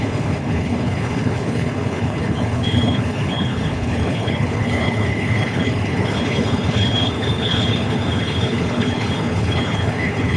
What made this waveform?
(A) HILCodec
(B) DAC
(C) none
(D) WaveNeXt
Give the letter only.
A